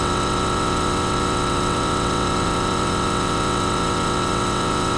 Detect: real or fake fake